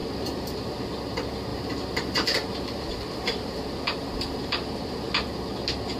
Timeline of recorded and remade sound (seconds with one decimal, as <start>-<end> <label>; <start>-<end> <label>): 0.0-0.8 remade; 0.8-1.5 recorded; 1.5-5.1 remade; 5.1-6.0 recorded